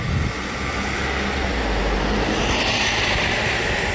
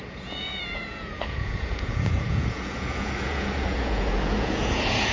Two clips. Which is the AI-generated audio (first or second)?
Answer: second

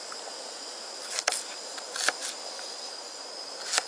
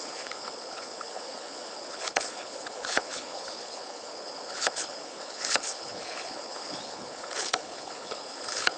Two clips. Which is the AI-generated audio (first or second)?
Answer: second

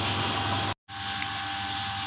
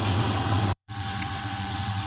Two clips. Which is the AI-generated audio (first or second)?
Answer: second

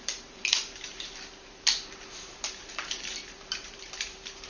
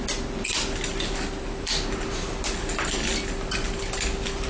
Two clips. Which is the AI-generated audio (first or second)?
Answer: first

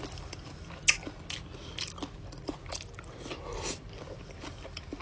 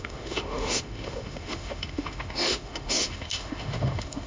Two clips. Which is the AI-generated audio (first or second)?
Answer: second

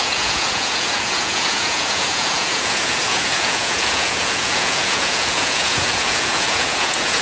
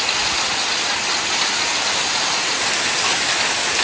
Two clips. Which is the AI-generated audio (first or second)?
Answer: first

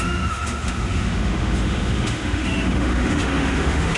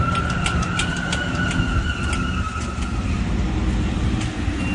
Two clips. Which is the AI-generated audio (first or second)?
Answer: first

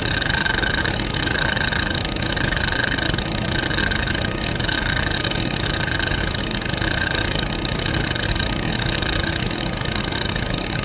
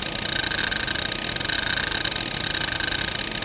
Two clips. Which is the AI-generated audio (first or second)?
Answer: first